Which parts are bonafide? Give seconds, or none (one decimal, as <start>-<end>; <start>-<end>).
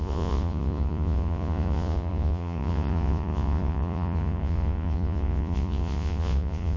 none